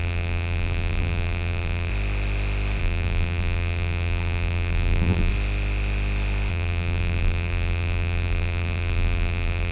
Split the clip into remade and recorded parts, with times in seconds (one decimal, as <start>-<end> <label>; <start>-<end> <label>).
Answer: 0.0-1.9 remade; 1.9-2.8 recorded; 2.8-5.3 remade; 5.3-6.5 recorded; 6.5-9.7 remade